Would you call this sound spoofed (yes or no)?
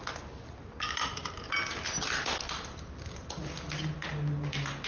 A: no